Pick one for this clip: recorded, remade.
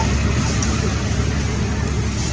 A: recorded